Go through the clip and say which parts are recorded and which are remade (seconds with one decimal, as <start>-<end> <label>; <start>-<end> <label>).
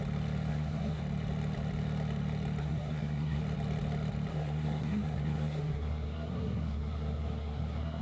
0.0-0.5 recorded; 0.5-1.0 remade; 1.0-2.6 recorded; 2.6-3.4 remade; 3.4-4.3 recorded; 4.3-8.0 remade